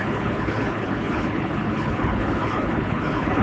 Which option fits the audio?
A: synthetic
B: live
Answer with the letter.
A